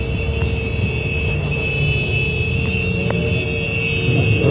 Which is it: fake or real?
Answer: real